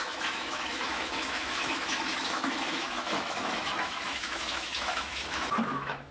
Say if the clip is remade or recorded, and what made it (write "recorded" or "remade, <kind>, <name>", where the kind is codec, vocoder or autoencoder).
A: remade, autoencoder, DAC-VAE